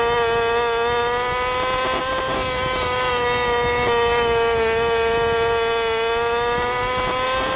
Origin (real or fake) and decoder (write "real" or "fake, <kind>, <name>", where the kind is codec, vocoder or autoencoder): real